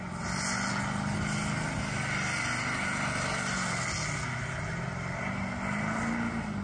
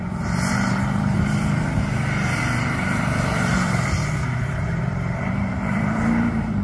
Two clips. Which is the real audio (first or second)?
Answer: first